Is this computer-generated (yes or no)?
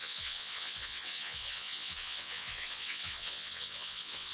yes